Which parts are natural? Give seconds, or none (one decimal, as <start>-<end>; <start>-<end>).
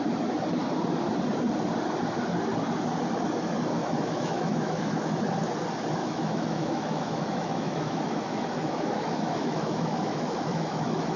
0.0-3.8; 5.2-6.0